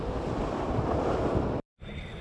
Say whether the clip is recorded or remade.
remade